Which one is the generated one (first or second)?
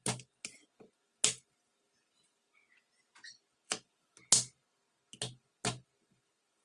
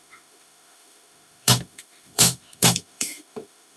second